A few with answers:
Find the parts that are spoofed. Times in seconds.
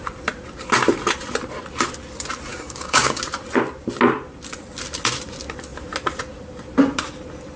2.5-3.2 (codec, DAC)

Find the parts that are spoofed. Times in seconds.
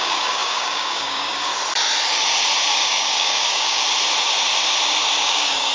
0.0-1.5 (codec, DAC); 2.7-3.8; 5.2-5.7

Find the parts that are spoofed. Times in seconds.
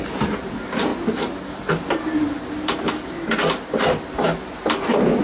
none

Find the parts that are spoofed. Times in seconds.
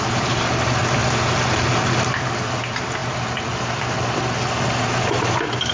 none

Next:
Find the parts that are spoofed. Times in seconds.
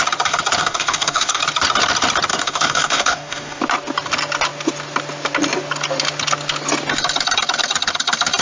0.6-1.4 (codec, DAC); 2.3-3.6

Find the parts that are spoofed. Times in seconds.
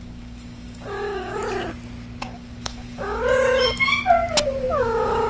0.0-1.4 (codec, DAC); 2.2-3.2; 4.8-5.3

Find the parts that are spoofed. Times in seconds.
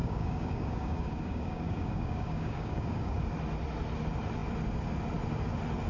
0.0-3.3 (codec, DAC)